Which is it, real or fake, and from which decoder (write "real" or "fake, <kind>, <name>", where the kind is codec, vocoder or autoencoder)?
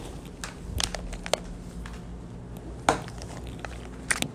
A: real